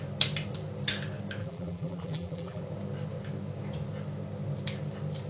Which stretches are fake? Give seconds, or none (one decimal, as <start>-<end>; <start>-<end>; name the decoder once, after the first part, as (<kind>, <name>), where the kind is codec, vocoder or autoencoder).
1.4-2.6 (vocoder, BigVGAN v2)